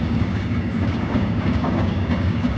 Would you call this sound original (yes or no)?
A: no